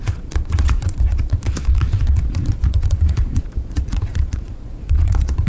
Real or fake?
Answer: fake